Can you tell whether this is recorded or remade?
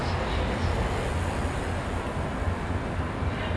recorded